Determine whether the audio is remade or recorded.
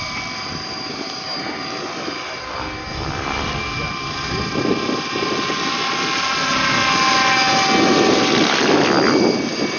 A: recorded